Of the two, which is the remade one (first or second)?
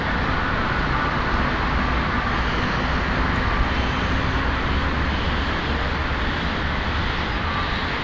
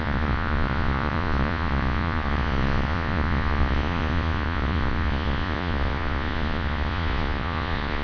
second